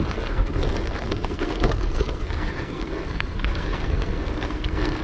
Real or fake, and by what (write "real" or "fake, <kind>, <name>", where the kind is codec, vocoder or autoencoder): fake, codec, SNAC